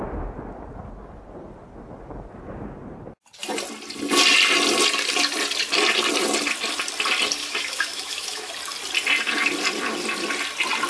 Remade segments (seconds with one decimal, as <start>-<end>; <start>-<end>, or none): 7.4-8.5